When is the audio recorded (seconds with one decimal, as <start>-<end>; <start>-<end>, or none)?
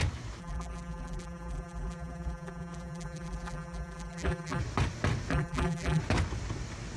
0.0-0.4; 4.6-5.3; 6.0-7.0